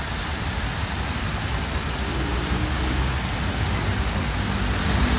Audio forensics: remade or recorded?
recorded